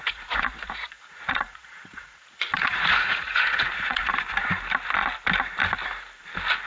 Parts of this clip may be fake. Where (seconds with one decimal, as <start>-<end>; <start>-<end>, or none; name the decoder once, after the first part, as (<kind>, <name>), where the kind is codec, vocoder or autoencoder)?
0.0-4.1 (vocoder, Vocos)